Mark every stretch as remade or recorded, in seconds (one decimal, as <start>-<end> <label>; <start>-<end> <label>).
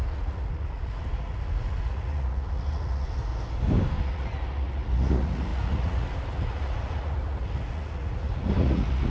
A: 0.0-3.3 remade; 3.3-4.0 recorded; 4.0-9.1 remade